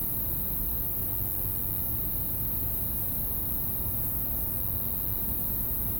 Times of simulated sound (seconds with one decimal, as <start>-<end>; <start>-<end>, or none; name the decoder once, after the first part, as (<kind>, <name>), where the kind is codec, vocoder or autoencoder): 0.0-1.1 (vocoder, Vocos); 1.8-4.5; 5.2-6.0